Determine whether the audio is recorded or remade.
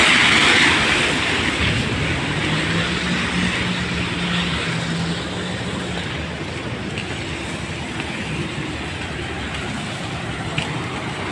recorded